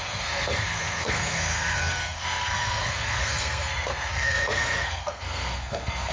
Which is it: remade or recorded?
remade